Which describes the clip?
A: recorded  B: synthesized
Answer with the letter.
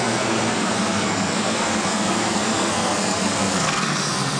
B